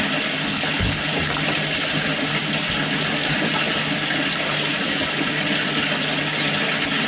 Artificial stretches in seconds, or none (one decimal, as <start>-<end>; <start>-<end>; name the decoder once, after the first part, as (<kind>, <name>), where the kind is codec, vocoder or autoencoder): 0.5-1.0 (codec, HILCodec)